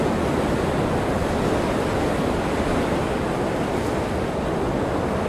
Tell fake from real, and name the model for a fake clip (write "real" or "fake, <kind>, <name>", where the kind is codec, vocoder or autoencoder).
real